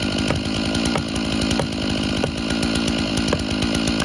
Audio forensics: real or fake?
real